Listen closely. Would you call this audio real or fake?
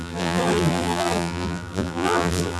fake